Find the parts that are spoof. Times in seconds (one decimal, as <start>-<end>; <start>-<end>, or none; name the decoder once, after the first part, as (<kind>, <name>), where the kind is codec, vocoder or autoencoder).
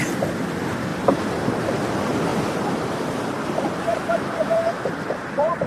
0.9-1.4 (vocoder, BigVGAN v2); 2.3-5.7